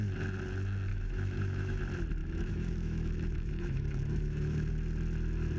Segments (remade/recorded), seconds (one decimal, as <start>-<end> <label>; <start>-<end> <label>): 0.0-0.9 recorded; 0.9-1.8 remade; 1.8-2.2 recorded; 2.2-4.7 remade; 4.7-5.6 recorded